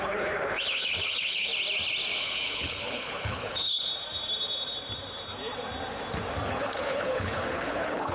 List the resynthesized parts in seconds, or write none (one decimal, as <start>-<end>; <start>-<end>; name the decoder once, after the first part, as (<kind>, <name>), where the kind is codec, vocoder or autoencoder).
0.0-1.5 (codec, HILCodec); 2.2-3.9; 6.5-8.1